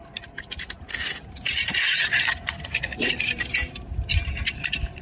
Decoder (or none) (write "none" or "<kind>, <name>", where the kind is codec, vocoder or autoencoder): none